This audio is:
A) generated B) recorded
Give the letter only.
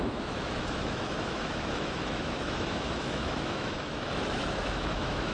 A